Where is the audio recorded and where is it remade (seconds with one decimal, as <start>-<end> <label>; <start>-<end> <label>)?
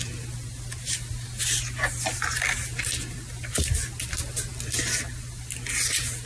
0.0-6.3 recorded